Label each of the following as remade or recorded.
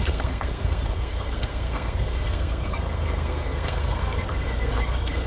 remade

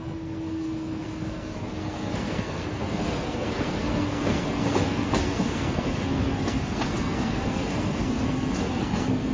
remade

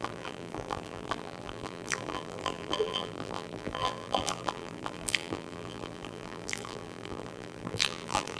remade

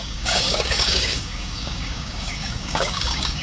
remade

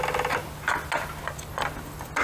recorded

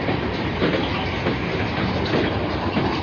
remade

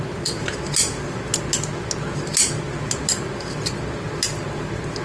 recorded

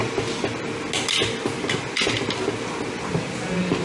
recorded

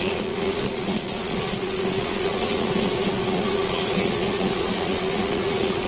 remade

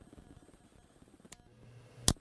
recorded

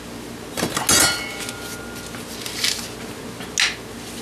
recorded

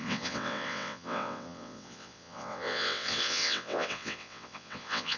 remade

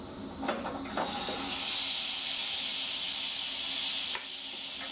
recorded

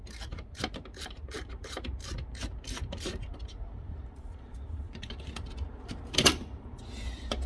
remade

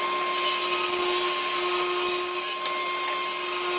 recorded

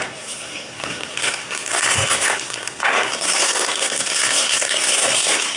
remade